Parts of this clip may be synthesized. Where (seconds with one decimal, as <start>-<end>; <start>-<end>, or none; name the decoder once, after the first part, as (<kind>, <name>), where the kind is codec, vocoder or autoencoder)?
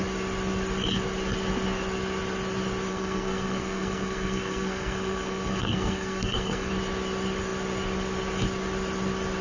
2.9-6.7 (codec, SNAC)